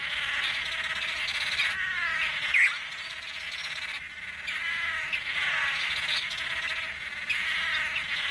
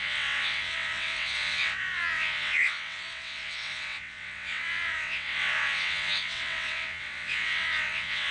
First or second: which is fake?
second